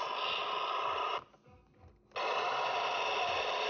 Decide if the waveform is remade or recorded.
recorded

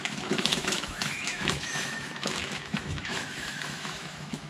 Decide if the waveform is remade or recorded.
remade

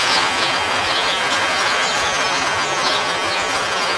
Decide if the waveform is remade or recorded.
remade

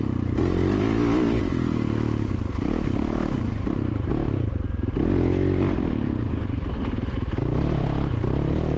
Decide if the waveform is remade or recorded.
recorded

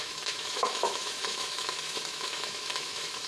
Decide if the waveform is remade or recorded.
remade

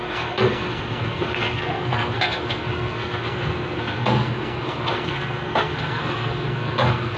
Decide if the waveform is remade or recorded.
remade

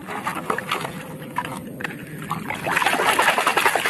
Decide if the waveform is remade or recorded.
recorded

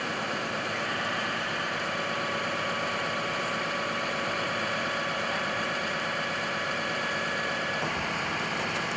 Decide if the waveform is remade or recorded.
remade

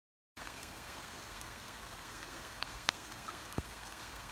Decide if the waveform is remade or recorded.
remade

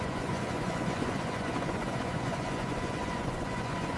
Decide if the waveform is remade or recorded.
remade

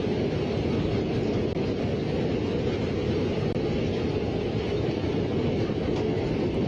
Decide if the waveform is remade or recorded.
recorded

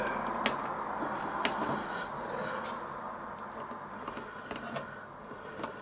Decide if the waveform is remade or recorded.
recorded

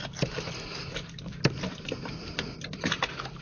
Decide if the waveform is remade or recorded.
recorded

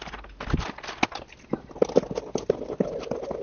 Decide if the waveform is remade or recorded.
recorded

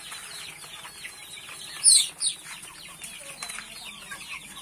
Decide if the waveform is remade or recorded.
recorded